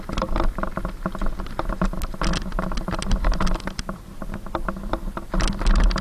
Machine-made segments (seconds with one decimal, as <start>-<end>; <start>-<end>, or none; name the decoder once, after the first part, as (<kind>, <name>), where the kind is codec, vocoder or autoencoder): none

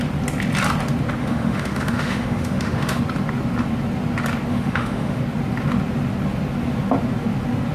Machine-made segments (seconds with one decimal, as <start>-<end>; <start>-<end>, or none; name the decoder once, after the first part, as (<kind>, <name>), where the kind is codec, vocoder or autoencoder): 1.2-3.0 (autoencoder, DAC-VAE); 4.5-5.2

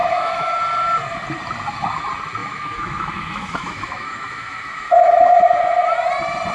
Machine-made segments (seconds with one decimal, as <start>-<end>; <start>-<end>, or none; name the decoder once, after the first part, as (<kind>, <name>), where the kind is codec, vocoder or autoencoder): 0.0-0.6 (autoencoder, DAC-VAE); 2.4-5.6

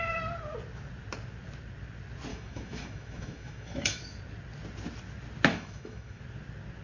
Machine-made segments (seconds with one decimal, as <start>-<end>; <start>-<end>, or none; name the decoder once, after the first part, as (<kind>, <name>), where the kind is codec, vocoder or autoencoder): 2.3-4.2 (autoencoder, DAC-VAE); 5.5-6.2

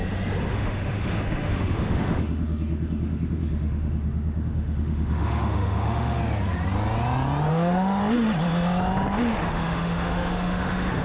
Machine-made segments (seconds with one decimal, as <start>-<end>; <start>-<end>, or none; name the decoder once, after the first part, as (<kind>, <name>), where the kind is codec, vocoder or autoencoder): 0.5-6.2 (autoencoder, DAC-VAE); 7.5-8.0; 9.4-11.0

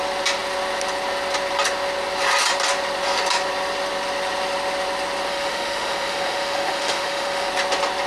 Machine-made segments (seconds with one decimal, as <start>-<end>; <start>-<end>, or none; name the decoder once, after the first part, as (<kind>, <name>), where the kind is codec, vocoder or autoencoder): 5.3-7.5 (autoencoder, DAC-VAE)

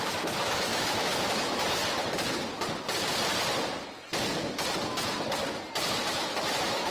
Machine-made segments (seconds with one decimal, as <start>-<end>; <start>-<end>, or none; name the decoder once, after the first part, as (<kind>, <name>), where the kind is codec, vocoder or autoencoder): 0.0-1.8 (autoencoder, DAC-VAE); 5.9-6.9

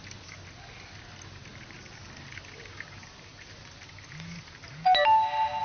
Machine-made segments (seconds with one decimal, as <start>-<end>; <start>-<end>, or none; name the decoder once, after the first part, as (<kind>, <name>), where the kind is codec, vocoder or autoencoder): none